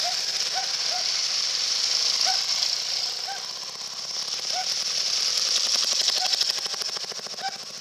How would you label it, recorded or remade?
remade